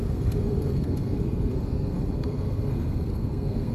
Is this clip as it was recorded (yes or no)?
no